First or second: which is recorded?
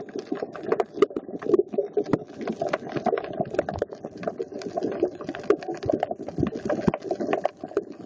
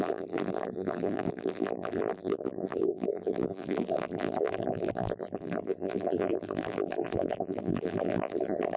first